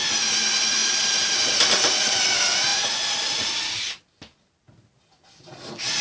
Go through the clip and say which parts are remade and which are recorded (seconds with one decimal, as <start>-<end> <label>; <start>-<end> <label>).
0.0-0.8 recorded; 0.8-2.2 remade; 2.2-2.7 recorded; 2.7-3.6 remade; 3.6-6.0 recorded